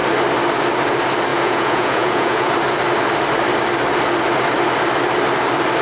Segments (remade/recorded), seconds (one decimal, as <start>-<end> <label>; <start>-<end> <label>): 0.0-1.3 recorded; 1.3-2.5 remade; 2.5-5.8 recorded